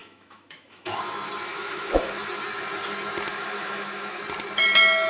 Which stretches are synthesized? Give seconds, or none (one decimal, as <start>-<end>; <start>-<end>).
0.0-1.0; 1.5-2.2; 3.3-4.2